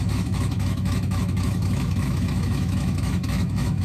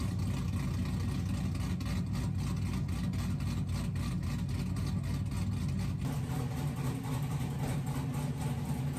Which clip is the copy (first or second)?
first